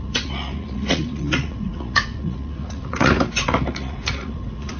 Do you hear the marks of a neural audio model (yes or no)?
yes